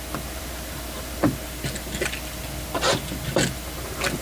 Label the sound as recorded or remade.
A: recorded